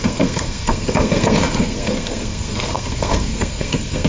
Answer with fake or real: fake